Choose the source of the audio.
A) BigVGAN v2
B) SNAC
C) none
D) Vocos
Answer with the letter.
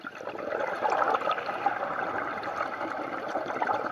C